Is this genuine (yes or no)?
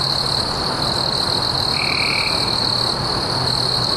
yes